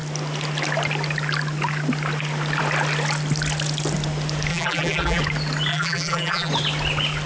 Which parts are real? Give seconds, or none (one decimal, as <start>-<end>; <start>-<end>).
0.0-4.5; 5.2-5.7; 6.5-7.3